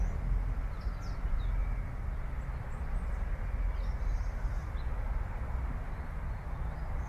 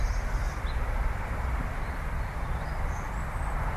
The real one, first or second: first